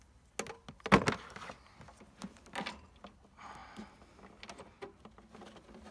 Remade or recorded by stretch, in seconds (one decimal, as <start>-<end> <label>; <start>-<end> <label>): 0.0-5.9 recorded